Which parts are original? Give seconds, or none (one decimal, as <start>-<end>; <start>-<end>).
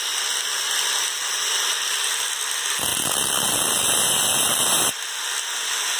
0.0-6.0